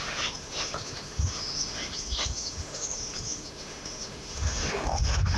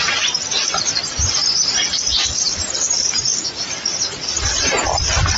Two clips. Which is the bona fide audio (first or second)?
second